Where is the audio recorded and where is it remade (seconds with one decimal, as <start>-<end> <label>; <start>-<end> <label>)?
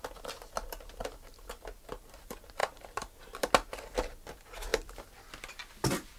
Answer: 0.0-2.6 recorded; 2.6-3.5 remade; 3.5-6.2 recorded